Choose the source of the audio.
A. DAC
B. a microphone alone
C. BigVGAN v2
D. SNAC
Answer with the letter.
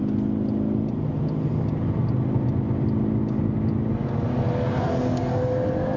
B